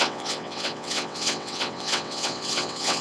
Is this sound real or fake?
fake